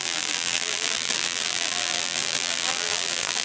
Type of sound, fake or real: fake